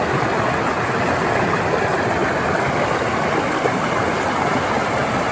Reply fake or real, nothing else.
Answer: real